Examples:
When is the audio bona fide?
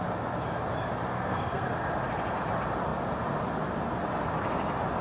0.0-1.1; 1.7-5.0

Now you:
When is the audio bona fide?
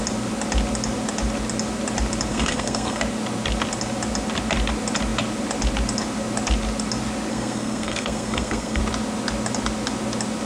0.0-2.3; 3.0-7.3; 8.8-10.5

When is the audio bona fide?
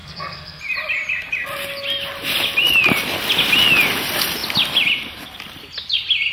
0.6-6.3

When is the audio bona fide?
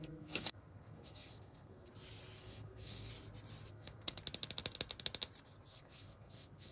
1.9-2.4; 3.1-3.7; 4.2-5.7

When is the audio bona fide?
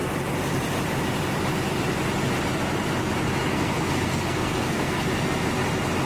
0.0-3.4; 5.5-6.1